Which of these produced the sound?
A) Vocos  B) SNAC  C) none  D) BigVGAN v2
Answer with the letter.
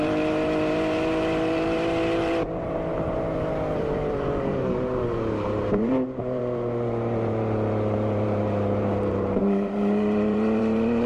D